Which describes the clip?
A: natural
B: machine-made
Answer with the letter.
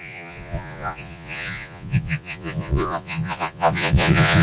B